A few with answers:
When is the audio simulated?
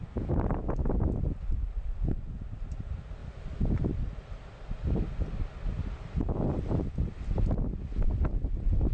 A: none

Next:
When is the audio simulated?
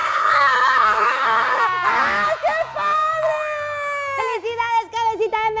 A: 0.0-1.6 (codec, SNAC)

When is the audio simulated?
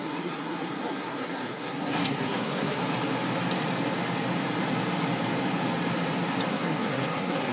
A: 0.0-2.8 (codec, SNAC); 6.5-7.5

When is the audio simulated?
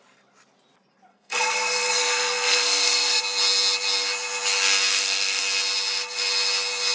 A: 1.1-3.2 (codec, SNAC); 4.9-5.4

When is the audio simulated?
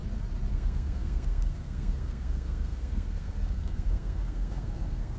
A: 0.5-5.2 (codec, SNAC)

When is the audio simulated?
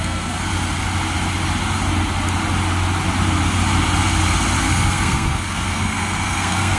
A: 0.0-0.5 (codec, SNAC); 4.6-6.8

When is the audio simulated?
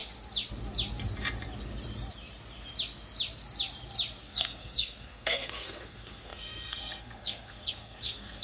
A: 4.2-8.4 (codec, SNAC)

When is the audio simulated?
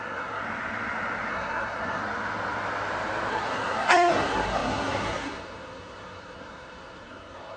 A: 0.0-0.4 (codec, SNAC); 1.3-2.0; 3.3-7.6